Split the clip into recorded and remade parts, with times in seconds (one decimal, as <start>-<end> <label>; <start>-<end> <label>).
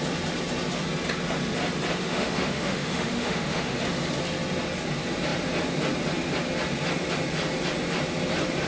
0.0-2.0 recorded; 2.0-3.8 remade; 3.8-8.7 recorded